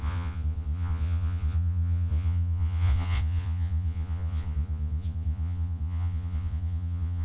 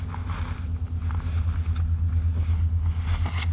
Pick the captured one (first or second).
second